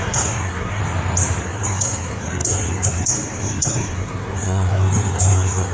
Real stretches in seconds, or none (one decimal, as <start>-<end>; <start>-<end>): 0.8-1.4